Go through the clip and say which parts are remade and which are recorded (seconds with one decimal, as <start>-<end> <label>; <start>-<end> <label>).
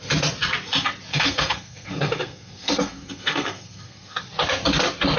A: 0.0-1.1 recorded; 1.1-4.2 remade; 4.2-5.2 recorded